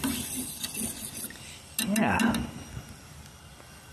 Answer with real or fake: real